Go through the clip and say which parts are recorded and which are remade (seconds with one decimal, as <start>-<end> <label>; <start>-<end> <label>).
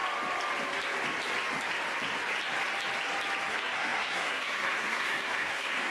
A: 0.0-3.5 recorded; 3.5-5.9 remade